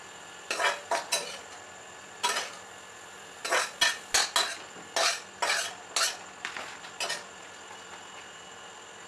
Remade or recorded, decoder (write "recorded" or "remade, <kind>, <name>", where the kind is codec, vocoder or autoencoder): recorded